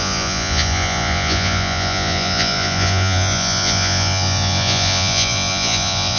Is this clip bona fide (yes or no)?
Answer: no